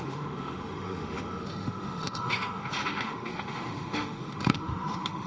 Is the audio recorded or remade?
remade